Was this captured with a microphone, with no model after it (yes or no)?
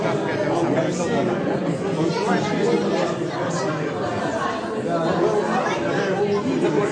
yes